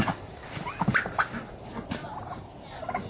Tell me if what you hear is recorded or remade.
recorded